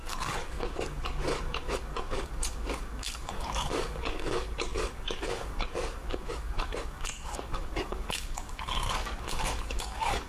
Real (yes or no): no